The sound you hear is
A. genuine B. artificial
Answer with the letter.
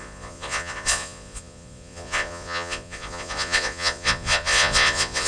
B